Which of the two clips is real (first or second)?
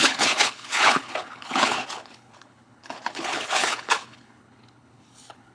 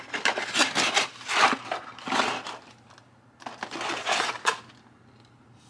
second